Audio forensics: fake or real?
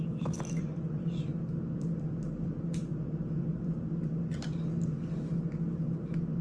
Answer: real